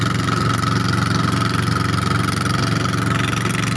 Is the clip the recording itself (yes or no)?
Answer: yes